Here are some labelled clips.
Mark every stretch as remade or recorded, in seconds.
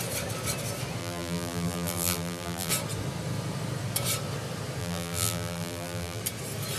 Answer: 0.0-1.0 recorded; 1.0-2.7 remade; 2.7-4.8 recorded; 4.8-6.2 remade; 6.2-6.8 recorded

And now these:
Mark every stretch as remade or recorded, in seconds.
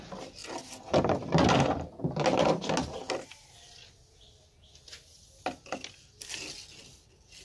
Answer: 0.0-7.4 recorded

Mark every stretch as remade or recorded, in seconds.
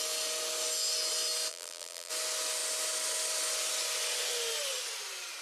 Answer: 0.0-1.5 recorded; 1.5-2.1 remade; 2.1-5.4 recorded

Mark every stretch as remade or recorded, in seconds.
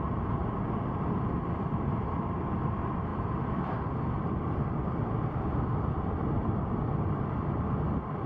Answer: 0.0-0.4 recorded; 0.4-1.1 remade; 1.1-3.1 recorded; 3.1-6.8 remade; 6.8-8.3 recorded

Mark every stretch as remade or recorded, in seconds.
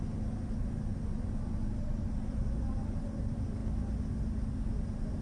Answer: 0.0-5.2 recorded